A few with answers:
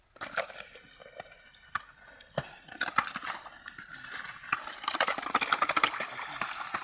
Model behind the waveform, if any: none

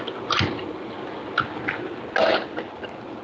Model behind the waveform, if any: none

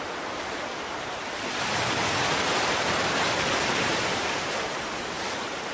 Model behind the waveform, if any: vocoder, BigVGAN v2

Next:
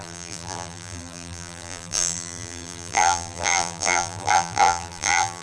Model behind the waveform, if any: vocoder, BigVGAN v2